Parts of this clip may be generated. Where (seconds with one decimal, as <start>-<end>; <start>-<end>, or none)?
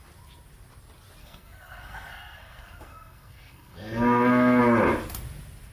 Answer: 1.2-4.6